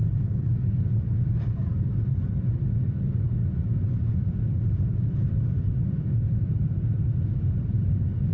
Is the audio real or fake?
real